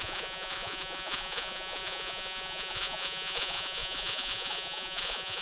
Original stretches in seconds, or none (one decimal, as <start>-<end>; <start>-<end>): none